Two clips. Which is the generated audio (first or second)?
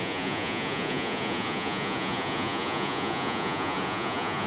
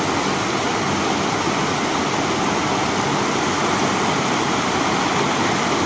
first